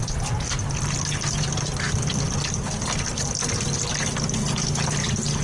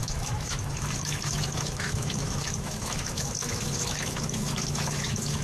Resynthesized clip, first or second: second